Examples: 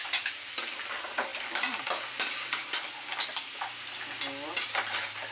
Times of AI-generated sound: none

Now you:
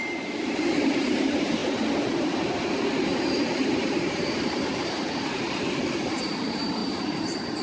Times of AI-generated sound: 0.0-1.6 (vocoder, BigVGAN v2); 2.5-7.6